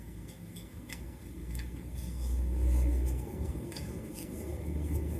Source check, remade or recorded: remade